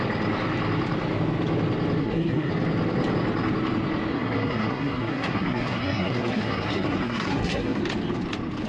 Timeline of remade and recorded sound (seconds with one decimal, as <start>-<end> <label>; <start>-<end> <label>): 0.0-2.0 recorded; 2.0-2.5 remade; 2.5-4.1 recorded; 4.1-7.8 remade; 7.8-8.7 recorded